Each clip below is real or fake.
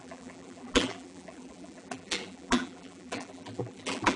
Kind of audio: fake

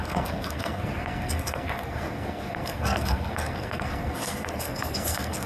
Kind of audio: fake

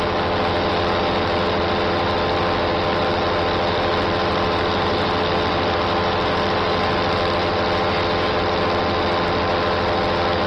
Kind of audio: real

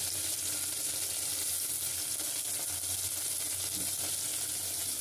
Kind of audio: real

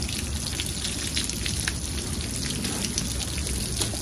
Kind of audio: real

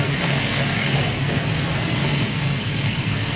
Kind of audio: fake